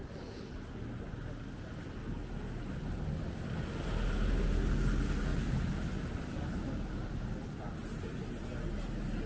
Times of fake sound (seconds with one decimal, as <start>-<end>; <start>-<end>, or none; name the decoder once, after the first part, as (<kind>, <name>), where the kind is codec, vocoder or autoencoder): none